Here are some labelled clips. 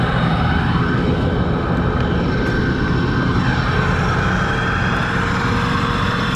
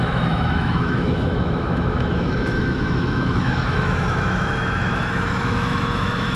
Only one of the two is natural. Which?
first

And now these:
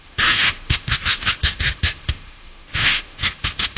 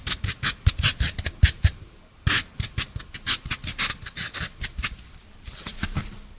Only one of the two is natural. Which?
second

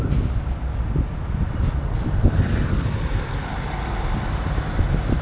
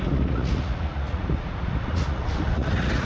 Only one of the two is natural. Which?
first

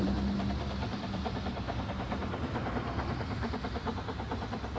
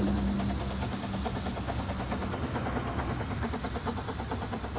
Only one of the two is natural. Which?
second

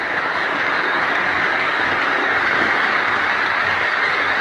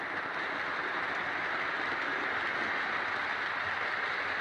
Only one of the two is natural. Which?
second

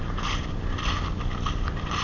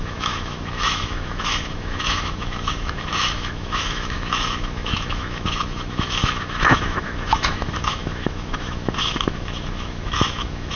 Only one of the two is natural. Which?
first